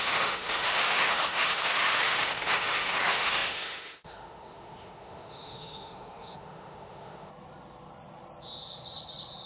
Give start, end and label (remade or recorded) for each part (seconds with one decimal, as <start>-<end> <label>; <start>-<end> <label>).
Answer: 0.0-7.3 remade; 7.3-9.5 recorded